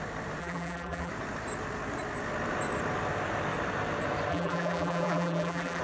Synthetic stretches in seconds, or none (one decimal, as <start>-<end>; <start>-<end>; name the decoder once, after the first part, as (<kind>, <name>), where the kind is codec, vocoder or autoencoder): 0.4-1.1 (vocoder, BigVGAN v2); 4.3-5.8